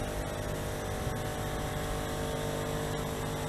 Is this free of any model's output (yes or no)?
yes